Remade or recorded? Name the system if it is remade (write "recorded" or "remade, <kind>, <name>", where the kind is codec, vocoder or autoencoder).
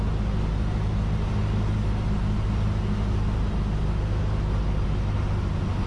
recorded